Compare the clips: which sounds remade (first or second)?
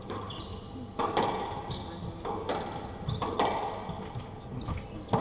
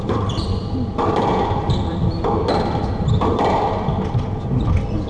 second